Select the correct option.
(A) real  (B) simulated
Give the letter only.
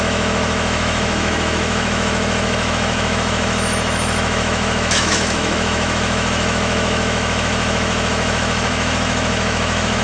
B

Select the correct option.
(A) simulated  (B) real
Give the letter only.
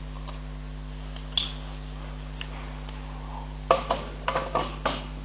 B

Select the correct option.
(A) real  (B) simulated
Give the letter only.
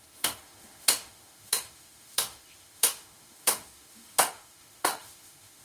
B